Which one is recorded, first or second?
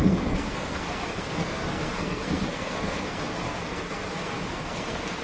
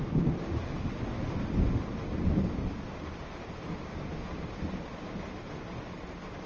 second